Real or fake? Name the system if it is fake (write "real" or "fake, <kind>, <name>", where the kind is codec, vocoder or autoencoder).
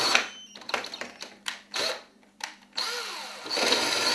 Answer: real